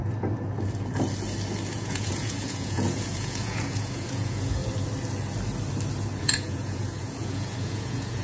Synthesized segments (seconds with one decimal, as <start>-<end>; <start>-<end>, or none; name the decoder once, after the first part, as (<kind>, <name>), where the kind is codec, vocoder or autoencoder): 1.7-4.6 (vocoder, Vocos); 6.2-8.2